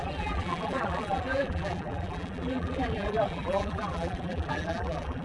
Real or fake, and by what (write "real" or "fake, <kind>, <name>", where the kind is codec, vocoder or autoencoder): fake, vocoder, BigVGAN v2